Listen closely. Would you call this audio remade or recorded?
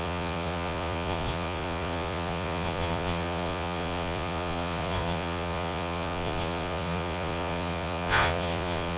remade